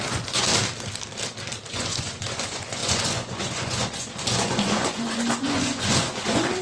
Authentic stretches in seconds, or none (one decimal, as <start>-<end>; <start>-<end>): 0.5-1.7